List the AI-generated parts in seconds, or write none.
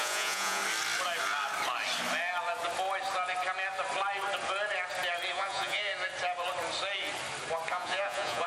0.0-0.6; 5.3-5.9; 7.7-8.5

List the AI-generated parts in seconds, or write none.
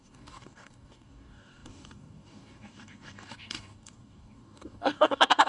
0.0-5.5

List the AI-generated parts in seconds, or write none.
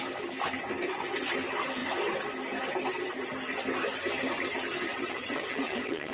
4.9-6.1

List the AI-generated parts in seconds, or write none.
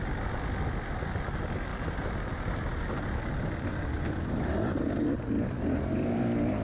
none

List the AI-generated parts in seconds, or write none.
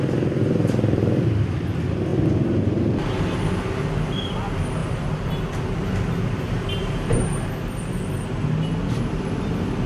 6.8-7.5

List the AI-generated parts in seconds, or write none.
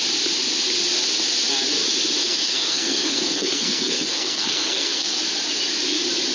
2.2-5.2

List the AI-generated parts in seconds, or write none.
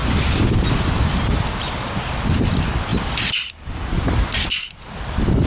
0.0-5.5